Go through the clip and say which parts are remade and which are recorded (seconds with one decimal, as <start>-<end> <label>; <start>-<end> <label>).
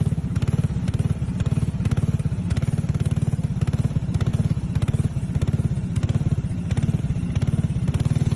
0.0-8.4 recorded